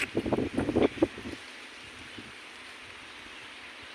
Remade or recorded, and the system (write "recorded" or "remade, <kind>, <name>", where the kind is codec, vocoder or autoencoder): recorded